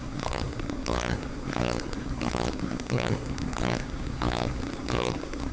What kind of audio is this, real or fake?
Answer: fake